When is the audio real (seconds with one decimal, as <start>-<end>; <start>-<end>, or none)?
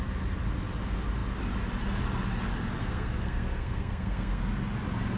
0.0-2.8; 4.4-5.2